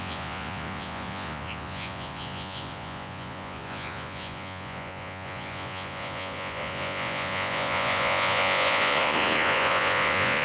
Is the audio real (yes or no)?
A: no